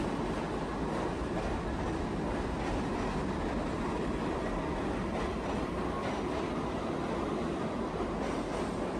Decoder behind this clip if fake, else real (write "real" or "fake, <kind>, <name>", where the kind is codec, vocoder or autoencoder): real